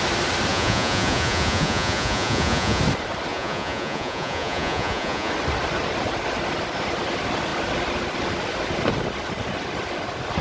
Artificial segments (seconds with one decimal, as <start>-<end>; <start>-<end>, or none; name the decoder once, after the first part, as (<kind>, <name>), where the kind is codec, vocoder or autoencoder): 0.5-2.8 (vocoder, Vocos); 3.3-5.3